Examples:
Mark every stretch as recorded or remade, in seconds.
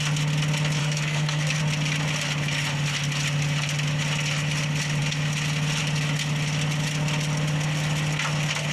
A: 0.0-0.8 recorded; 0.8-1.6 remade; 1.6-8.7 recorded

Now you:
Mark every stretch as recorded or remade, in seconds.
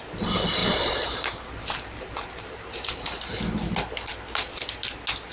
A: 0.0-0.6 recorded; 0.6-3.4 remade; 3.4-5.3 recorded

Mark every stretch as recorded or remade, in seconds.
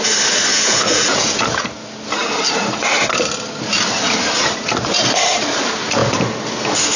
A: 0.0-0.5 recorded; 0.5-1.4 remade; 1.4-7.0 recorded